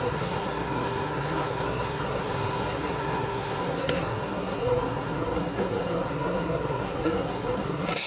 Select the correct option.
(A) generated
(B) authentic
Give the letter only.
A